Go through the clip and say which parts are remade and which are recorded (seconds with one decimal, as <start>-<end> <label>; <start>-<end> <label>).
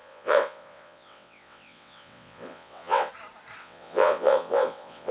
0.0-3.1 remade; 3.1-3.6 recorded; 3.6-5.1 remade